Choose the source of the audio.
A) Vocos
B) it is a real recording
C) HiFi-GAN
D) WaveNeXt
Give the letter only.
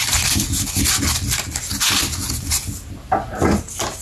B